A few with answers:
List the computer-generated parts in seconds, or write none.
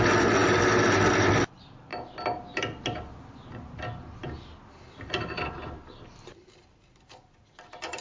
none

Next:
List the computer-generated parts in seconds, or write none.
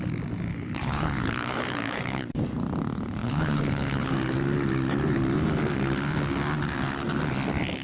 0.5-2.3 (codec, HILCodec); 3.2-4.1